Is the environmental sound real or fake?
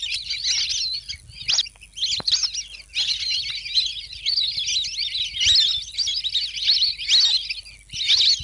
real